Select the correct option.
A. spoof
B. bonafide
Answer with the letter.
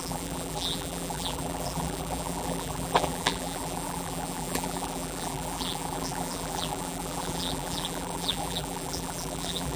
A